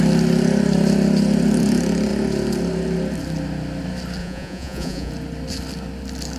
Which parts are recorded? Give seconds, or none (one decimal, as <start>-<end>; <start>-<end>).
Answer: 0.0-4.2; 5.1-6.4